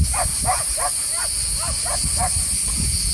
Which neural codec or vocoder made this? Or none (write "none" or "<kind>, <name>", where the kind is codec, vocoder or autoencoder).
none